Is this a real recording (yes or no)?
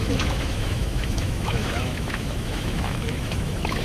no